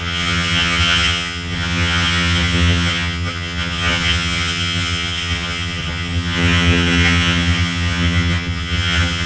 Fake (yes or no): yes